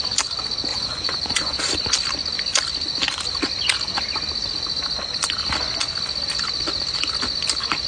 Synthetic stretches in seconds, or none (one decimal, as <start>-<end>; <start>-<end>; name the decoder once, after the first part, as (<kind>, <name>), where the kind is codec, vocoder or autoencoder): 0.7-1.6 (vocoder, Vocos)